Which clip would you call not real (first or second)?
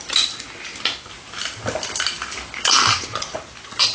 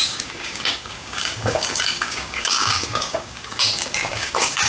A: second